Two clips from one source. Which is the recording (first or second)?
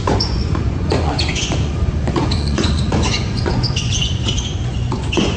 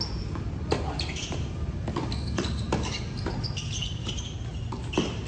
second